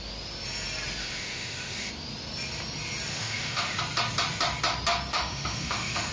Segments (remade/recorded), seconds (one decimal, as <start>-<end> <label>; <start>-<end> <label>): 0.0-1.0 recorded; 1.0-1.9 remade; 1.9-3.1 recorded; 3.1-3.8 remade; 3.8-5.1 recorded; 5.1-6.1 remade